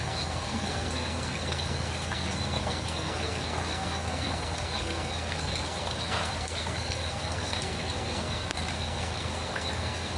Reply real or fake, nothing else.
fake